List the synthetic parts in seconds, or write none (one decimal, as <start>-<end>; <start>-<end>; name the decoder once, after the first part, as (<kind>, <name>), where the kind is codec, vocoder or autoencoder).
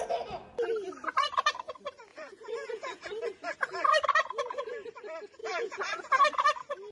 2.1-3.2 (vocoder, Vocos); 5.4-6.1